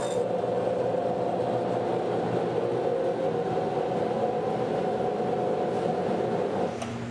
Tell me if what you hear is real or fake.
real